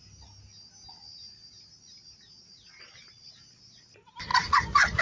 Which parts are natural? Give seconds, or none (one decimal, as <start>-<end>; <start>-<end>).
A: 0.0-4.3